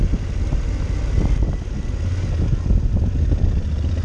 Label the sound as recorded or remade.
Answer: recorded